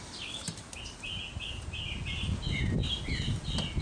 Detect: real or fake real